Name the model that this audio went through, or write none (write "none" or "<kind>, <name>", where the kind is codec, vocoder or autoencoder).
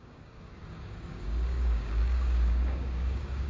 codec, DAC